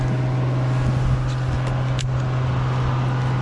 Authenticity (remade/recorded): recorded